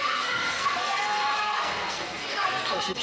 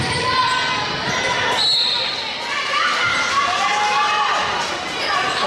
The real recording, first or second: second